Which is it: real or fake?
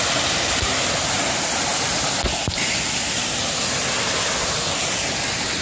real